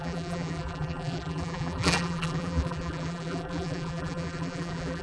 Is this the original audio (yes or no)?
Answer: no